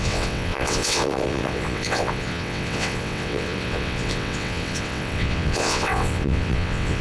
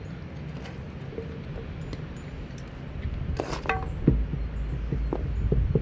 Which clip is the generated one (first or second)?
first